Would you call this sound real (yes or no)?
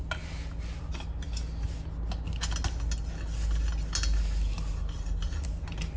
yes